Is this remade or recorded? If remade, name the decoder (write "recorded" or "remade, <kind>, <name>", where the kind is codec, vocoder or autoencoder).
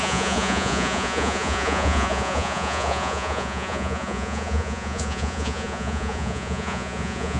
remade, vocoder, Vocos